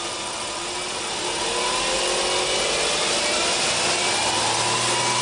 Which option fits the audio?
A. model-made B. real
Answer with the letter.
B